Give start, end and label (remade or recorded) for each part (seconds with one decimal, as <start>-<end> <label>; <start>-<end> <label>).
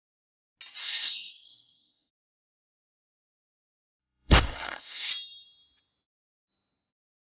0.0-0.8 recorded; 0.8-3.4 remade; 3.4-4.0 recorded; 4.0-5.1 remade; 5.1-7.3 recorded